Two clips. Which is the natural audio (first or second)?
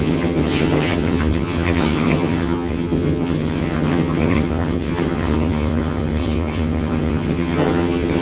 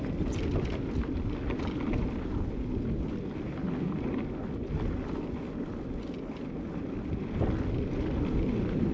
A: second